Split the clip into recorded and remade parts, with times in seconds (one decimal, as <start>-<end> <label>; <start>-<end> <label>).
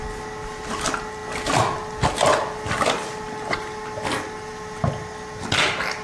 0.0-6.0 recorded